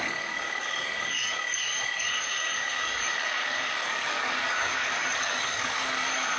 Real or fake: fake